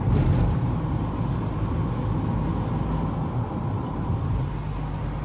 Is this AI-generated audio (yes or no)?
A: no